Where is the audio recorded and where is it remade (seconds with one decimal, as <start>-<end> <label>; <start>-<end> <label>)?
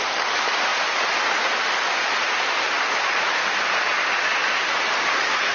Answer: 0.0-5.5 recorded